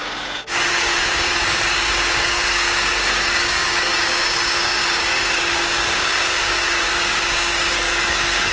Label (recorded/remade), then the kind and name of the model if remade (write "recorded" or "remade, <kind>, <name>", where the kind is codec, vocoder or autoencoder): remade, codec, DAC